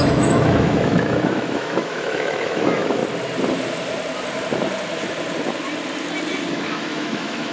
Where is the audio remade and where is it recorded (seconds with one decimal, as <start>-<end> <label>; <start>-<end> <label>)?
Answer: 0.0-3.0 remade; 3.0-6.5 recorded; 6.5-7.5 remade